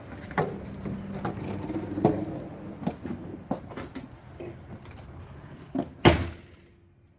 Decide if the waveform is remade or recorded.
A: recorded